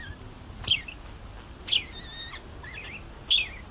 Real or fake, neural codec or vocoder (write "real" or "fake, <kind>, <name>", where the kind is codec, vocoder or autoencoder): real